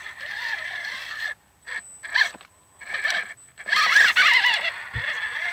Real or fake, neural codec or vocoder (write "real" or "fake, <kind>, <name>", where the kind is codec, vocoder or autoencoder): real